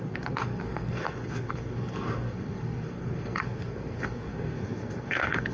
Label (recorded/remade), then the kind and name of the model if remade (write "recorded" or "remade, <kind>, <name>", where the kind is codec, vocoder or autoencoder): remade, codec, SNAC